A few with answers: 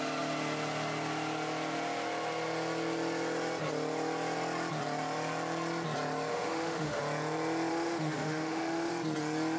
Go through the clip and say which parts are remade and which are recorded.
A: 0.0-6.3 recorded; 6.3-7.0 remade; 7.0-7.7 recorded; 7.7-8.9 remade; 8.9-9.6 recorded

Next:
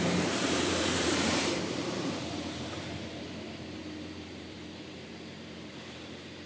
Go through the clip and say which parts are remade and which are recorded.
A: 0.0-6.5 remade